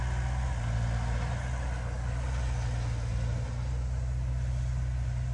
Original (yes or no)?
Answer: yes